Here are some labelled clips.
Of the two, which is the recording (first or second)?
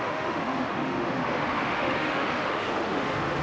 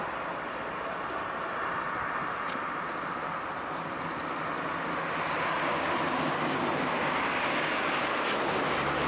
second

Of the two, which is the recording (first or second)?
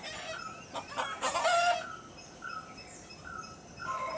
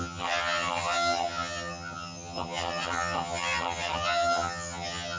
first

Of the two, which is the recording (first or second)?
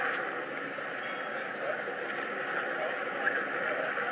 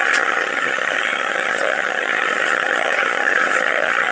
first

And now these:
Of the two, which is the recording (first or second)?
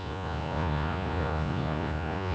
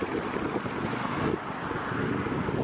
second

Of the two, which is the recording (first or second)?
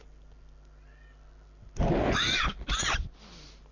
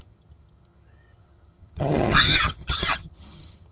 first